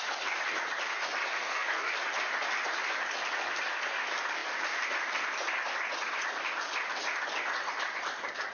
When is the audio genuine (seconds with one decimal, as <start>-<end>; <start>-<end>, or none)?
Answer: 0.0-1.4; 1.9-8.5